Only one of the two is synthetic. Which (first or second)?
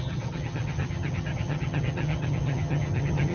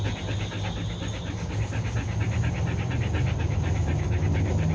first